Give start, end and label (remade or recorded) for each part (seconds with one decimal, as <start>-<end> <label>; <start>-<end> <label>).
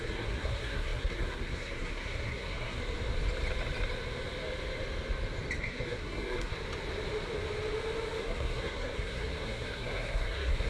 0.0-2.8 remade; 2.8-5.6 recorded; 5.6-6.5 remade; 6.5-8.2 recorded; 8.2-10.7 remade